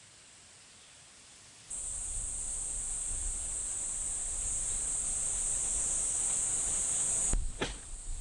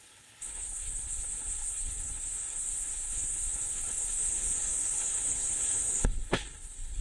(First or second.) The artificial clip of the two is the second